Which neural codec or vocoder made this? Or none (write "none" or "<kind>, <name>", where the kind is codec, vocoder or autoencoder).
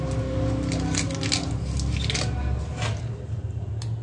none